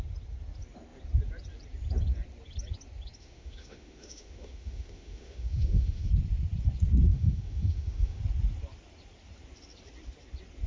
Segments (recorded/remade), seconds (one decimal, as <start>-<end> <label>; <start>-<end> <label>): 0.0-3.2 recorded; 3.2-6.1 remade; 6.1-7.1 recorded; 7.1-8.2 remade; 8.2-10.7 recorded